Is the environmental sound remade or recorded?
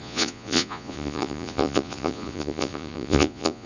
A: remade